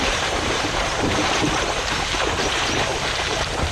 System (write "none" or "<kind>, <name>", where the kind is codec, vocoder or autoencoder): vocoder, BigVGAN v2